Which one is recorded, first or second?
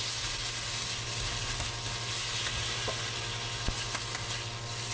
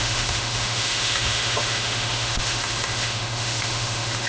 first